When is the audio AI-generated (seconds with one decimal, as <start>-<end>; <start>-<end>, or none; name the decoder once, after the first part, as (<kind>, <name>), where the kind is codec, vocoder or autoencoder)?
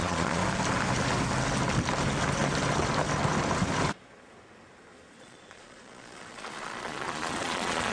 0.0-0.4 (vocoder, Vocos); 5.1-7.9